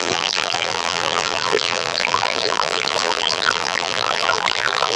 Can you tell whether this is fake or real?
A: fake